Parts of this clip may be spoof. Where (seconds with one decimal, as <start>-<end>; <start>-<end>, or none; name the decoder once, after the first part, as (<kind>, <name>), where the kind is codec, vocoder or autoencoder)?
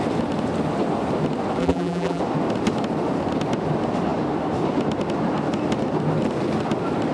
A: 1.6-2.2 (vocoder, BigVGAN v2)